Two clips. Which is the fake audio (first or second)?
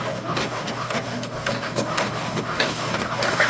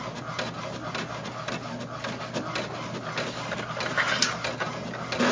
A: first